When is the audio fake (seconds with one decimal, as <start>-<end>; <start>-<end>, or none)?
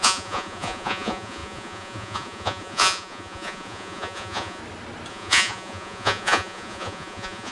0.0-4.6; 5.1-7.5